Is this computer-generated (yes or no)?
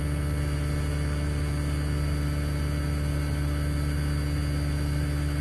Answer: no